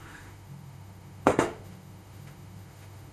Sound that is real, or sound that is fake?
fake